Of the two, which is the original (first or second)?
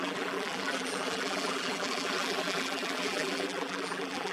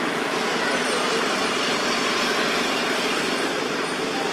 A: second